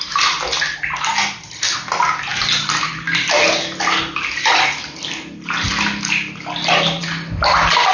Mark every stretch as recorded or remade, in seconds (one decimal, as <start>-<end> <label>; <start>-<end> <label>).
0.0-7.9 recorded